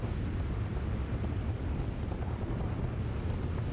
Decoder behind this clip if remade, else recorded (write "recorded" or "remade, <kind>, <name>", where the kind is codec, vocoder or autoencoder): recorded